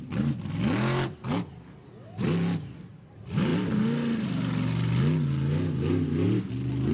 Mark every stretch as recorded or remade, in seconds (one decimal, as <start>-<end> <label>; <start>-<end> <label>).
0.0-6.9 recorded